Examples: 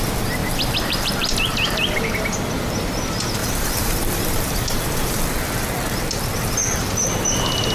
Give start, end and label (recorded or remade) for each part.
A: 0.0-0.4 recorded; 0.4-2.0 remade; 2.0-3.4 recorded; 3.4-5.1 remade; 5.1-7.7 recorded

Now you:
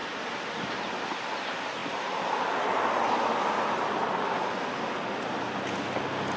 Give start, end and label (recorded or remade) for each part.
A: 0.0-6.4 recorded